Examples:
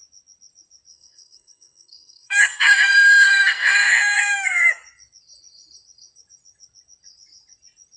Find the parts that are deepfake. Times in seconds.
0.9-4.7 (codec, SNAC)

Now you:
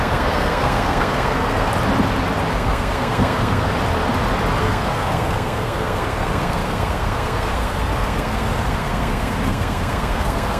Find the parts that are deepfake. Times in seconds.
0.0-1.7 (codec, SNAC); 2.5-3.7; 4.6-10.6